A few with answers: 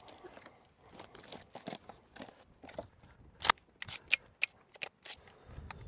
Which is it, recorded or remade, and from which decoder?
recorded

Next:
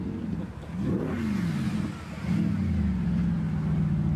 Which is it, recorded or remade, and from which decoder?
recorded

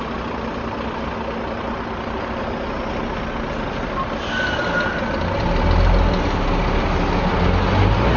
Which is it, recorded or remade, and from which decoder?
recorded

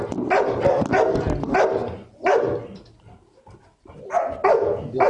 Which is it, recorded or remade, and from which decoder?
recorded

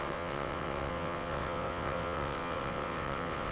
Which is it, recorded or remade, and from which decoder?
remade, vocoder, WaveNeXt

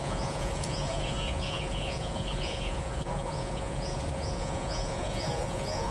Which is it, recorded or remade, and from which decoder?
remade, vocoder, Vocos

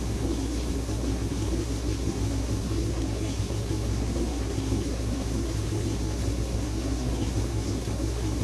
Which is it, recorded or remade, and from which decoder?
remade, codec, SNAC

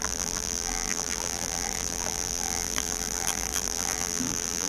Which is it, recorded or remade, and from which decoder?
remade, vocoder, BigVGAN v2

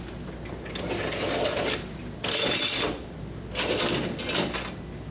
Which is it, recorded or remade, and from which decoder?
recorded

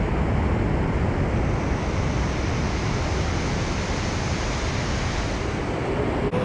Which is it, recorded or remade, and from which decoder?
recorded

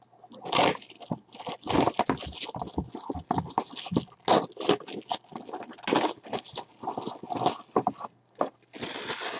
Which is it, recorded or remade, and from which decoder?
recorded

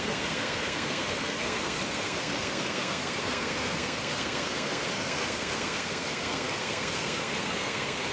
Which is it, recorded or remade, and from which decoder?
remade, codec, SNAC